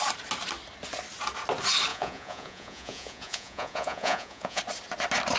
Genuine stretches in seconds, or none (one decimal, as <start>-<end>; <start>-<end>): 0.0-1.9; 4.6-5.4